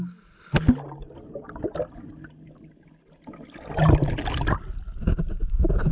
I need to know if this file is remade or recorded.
recorded